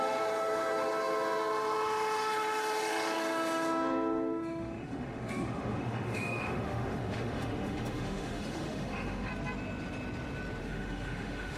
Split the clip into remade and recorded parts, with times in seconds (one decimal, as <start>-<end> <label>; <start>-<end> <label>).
0.0-9.3 remade; 9.3-10.6 recorded; 10.6-11.6 remade